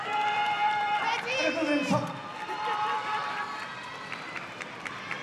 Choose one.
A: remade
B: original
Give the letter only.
A